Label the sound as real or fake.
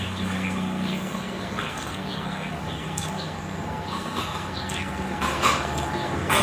fake